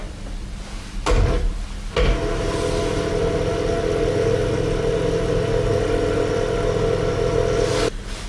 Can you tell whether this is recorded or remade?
recorded